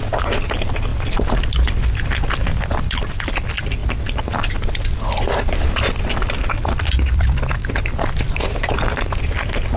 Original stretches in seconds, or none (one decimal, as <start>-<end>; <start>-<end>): 0.0-9.8